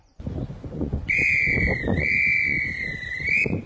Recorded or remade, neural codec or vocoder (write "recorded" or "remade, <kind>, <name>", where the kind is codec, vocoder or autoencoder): remade, vocoder, Vocos